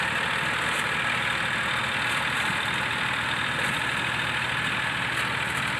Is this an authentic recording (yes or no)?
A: yes